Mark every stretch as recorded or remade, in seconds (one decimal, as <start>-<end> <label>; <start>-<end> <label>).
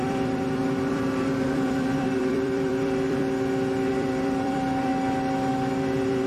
0.0-3.2 remade; 3.2-3.9 recorded; 3.9-4.9 remade; 4.9-5.5 recorded; 5.5-6.3 remade